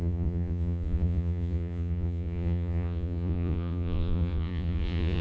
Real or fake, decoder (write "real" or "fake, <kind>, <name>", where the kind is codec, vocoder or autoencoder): fake, vocoder, Vocos